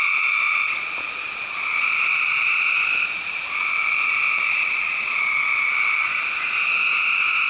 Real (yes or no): no